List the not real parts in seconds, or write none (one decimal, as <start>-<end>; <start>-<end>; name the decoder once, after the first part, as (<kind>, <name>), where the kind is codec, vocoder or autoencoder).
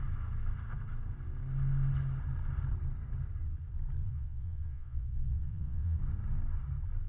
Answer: 4.0-6.0 (vocoder, Vocos)